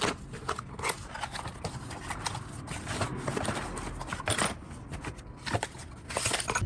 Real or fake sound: real